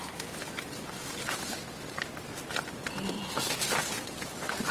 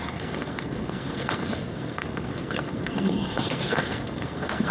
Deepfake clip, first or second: second